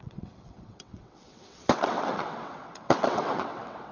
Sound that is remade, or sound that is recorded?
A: remade